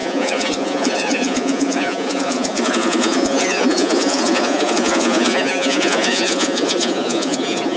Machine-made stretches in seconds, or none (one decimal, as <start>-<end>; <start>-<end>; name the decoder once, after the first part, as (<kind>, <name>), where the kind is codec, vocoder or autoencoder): 0.0-7.8 (vocoder, Vocos)